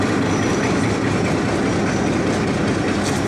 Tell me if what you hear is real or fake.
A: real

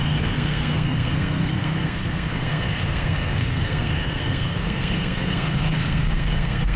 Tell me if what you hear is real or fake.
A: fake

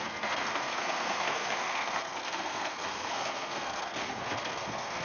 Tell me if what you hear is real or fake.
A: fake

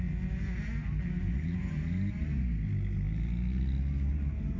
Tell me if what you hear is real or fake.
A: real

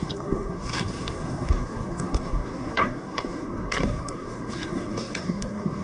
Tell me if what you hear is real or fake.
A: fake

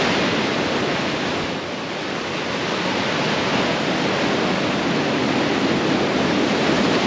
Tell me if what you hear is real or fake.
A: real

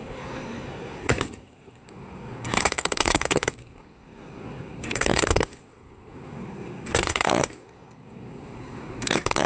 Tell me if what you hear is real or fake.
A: fake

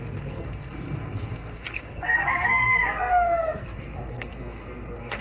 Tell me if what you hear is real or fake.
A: fake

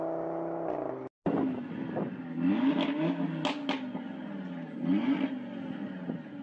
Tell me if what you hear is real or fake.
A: real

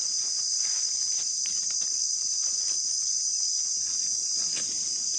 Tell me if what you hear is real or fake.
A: real